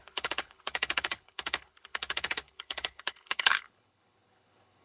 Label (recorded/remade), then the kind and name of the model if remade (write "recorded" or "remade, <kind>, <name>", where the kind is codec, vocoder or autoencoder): remade, codec, HILCodec